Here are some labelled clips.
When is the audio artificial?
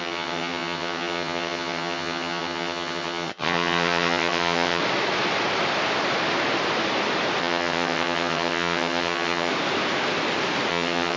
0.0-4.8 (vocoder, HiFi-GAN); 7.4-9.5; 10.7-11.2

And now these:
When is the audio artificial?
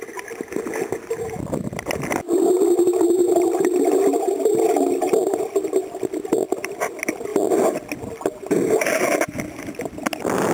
3.2-5.7 (vocoder, BigVGAN v2)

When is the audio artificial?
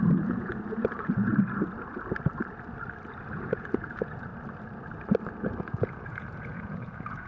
0.0-1.3 (vocoder, Vocos); 3.3-4.3; 5.6-7.3